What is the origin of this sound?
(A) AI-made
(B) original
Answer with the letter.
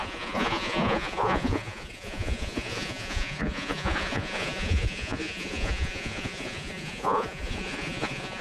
A